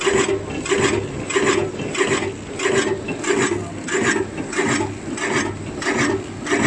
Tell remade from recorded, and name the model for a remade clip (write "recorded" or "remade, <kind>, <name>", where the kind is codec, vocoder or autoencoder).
recorded